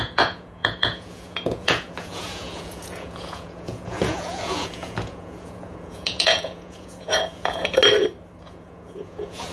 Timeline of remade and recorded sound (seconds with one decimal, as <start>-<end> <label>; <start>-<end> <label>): 0.0-7.8 remade; 7.8-8.4 recorded; 8.4-9.5 remade